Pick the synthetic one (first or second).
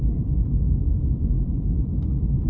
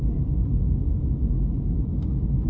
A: first